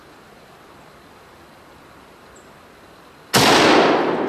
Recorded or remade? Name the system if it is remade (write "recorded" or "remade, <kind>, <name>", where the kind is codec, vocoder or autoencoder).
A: recorded